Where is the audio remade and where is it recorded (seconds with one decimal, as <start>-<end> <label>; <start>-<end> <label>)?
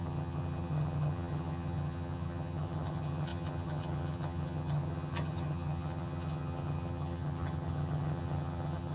0.0-8.9 remade